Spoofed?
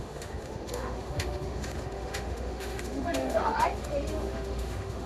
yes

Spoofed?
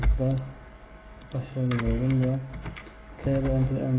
yes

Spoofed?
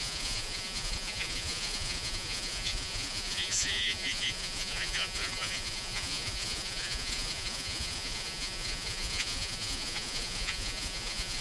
yes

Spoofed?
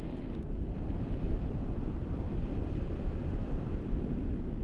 no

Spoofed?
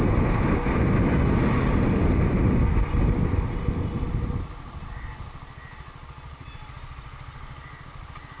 no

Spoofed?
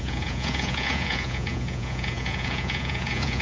yes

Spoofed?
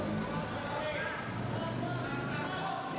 no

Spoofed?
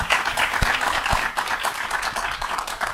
yes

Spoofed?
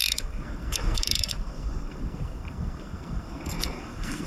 yes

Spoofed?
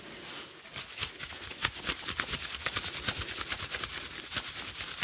no